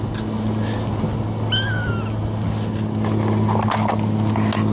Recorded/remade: recorded